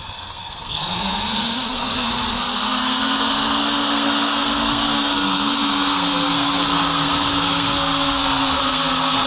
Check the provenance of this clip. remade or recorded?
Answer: remade